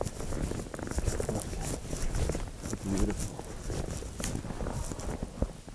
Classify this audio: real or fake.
real